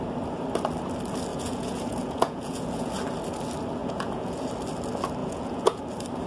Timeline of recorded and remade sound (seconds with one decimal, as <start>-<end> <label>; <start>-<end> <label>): 0.0-1.3 recorded; 1.3-2.9 remade; 2.9-3.8 recorded; 3.8-4.5 remade; 4.5-5.2 recorded; 5.2-5.8 remade; 5.8-6.3 recorded